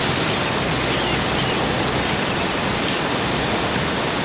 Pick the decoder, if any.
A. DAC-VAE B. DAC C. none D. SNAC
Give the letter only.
C